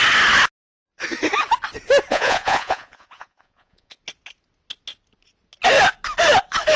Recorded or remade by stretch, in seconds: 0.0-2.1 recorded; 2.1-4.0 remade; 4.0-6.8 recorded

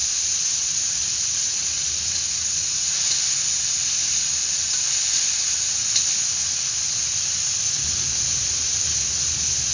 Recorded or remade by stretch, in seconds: 0.0-3.0 remade; 3.0-9.7 recorded

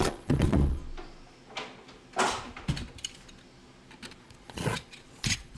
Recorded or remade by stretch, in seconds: 0.0-0.8 remade; 0.8-4.2 recorded; 4.2-5.6 remade

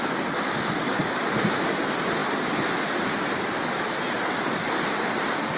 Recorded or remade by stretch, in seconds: 0.0-5.6 recorded